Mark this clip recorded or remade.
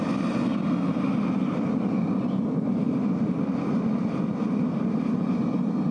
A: recorded